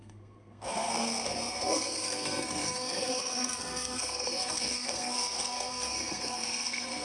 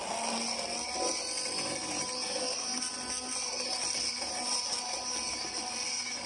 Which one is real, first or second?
second